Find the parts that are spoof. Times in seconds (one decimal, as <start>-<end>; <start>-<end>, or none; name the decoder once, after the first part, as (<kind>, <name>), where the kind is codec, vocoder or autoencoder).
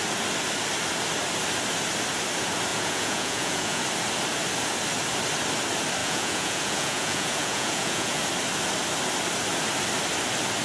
2.7-3.8 (vocoder, Vocos); 6.0-8.2